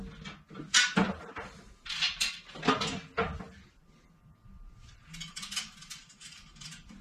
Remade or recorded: recorded